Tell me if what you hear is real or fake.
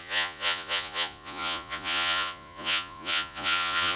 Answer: fake